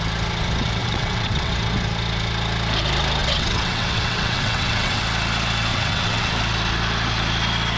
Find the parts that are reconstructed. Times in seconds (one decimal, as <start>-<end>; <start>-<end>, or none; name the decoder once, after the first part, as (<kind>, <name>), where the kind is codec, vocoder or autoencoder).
0.8-1.5 (vocoder, WaveNeXt); 3.2-5.0; 5.7-6.3